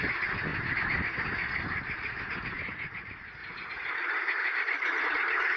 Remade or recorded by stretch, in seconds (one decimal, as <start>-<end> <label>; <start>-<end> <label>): 0.0-3.4 recorded; 3.4-3.9 remade; 3.9-4.4 recorded; 4.4-5.0 remade; 5.0-5.6 recorded